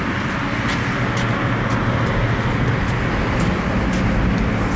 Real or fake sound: real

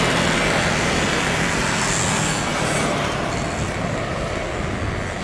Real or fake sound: real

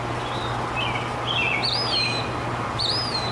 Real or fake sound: real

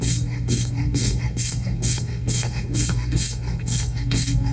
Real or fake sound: fake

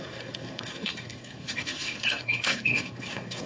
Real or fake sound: fake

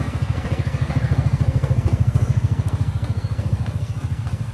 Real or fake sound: fake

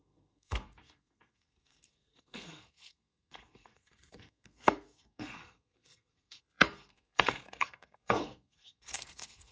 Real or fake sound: fake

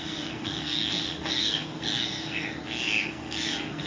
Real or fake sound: fake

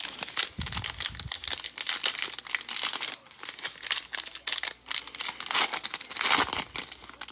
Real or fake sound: real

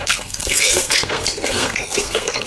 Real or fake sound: fake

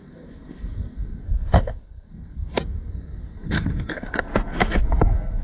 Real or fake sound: fake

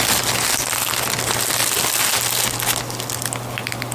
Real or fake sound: real